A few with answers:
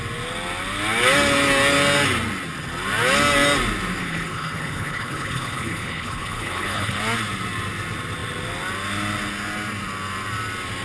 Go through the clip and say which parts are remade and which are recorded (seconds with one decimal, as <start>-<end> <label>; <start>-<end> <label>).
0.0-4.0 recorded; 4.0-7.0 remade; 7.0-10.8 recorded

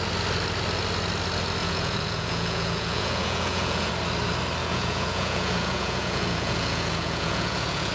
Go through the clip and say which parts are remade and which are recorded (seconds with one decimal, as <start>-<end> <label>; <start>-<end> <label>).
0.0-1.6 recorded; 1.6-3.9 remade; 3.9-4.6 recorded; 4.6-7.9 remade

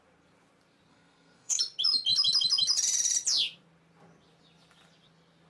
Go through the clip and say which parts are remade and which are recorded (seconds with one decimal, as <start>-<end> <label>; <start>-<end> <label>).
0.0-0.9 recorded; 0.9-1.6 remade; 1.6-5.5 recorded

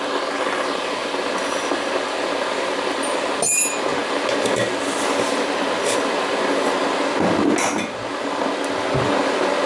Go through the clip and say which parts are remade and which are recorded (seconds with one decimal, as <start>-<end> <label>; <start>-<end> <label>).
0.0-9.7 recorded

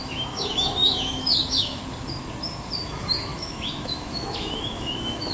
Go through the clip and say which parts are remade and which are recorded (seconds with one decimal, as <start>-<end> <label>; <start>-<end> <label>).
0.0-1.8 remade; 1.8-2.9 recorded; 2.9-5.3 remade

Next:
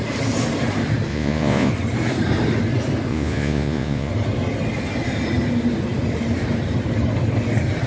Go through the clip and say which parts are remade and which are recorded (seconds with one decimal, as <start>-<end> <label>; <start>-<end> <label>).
0.0-1.1 recorded; 1.1-1.7 remade; 1.7-3.1 recorded; 3.1-4.1 remade; 4.1-7.9 recorded

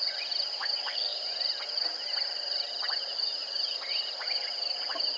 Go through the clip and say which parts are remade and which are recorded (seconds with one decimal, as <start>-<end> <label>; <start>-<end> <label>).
0.0-5.2 recorded